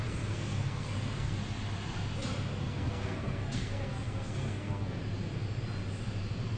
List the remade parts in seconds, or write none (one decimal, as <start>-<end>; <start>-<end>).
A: 0.0-1.4; 2.6-5.0